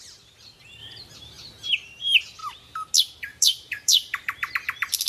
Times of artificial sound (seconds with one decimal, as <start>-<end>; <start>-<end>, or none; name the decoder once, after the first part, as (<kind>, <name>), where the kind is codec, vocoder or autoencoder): 2.4-2.9 (vocoder, BigVGAN v2); 3.3-4.5